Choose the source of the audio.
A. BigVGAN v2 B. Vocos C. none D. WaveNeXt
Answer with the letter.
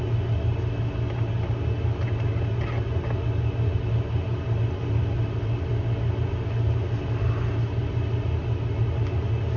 C